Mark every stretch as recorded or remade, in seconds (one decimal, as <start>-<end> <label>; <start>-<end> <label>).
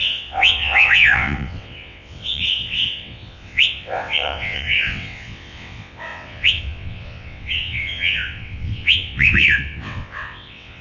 0.0-10.8 remade